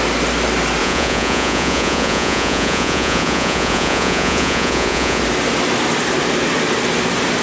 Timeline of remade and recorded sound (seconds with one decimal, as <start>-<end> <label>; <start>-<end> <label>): 0.0-0.8 recorded; 0.8-5.2 remade; 5.2-7.4 recorded